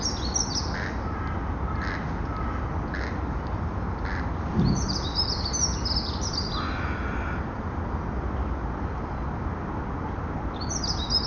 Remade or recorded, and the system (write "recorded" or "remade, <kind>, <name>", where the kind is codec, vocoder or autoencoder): recorded